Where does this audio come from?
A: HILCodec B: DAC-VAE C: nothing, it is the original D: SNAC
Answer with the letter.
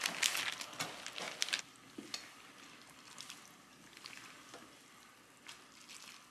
C